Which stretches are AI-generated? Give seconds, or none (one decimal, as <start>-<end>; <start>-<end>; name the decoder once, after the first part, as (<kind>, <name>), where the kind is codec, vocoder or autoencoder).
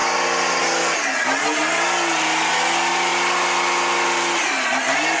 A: none